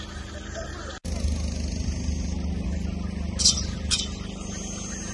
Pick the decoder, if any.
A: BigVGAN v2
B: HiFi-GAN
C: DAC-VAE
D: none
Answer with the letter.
D